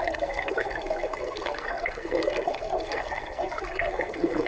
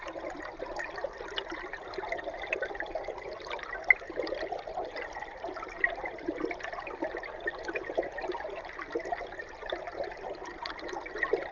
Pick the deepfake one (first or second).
first